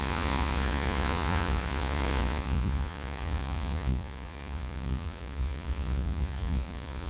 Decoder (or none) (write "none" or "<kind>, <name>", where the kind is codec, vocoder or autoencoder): vocoder, Vocos